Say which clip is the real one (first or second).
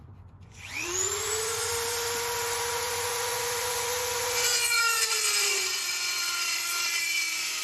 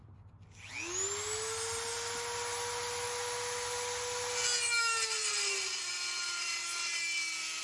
second